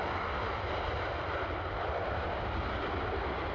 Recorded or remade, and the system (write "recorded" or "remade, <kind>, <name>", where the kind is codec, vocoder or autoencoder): recorded